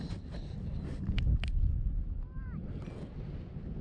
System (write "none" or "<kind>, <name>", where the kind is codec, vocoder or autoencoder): none